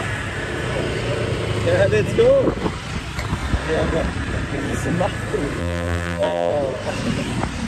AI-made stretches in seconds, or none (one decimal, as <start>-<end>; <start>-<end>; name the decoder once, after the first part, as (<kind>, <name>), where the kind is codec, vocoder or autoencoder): 5.6-6.5 (vocoder, BigVGAN v2)